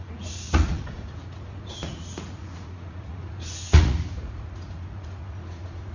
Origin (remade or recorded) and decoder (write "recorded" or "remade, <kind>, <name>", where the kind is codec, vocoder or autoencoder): remade, vocoder, Vocos